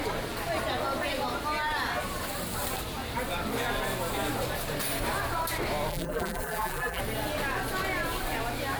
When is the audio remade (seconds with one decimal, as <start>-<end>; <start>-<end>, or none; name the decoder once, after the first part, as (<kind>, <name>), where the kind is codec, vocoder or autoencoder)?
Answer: 5.9-7.0 (vocoder, BigVGAN v2)